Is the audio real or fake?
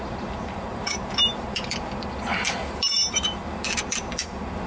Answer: fake